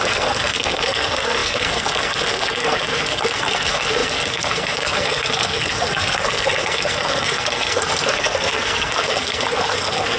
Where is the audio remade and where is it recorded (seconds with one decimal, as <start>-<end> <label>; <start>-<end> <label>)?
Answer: 0.0-10.2 remade